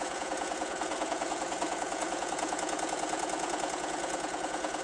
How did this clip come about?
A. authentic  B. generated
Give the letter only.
B